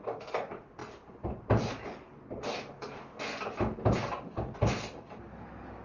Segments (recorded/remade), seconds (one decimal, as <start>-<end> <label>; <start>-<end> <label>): 0.0-5.8 recorded